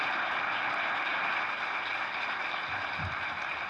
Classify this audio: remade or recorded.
recorded